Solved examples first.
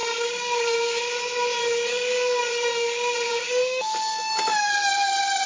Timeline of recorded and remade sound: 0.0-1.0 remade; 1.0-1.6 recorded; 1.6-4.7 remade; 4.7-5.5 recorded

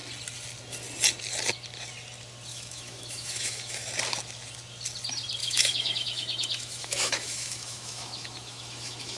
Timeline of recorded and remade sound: 0.0-2.5 recorded; 2.5-3.9 remade; 3.9-5.4 recorded; 5.4-9.2 remade